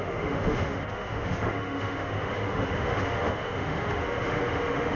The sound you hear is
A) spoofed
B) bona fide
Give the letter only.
A